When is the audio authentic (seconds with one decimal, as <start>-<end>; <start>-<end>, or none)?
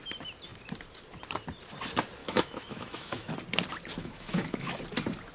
0.0-2.2; 3.3-4.0; 4.8-5.3